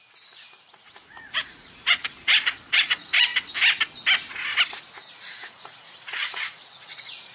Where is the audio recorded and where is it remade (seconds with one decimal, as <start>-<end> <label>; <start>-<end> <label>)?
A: 0.0-3.3 remade; 3.3-5.1 recorded; 5.1-7.3 remade